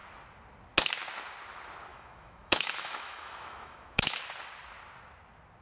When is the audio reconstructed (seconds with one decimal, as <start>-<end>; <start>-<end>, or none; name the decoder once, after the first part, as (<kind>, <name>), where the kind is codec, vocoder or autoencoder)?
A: 1.9-4.2 (autoencoder, DAC-VAE)